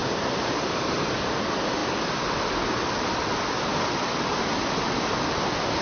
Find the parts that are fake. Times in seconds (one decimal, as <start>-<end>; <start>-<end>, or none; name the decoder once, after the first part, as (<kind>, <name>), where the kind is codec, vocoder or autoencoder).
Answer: 0.0-1.0 (vocoder, BigVGAN v2)